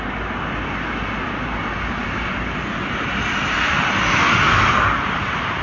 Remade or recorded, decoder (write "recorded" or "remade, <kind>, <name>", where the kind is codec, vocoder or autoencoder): recorded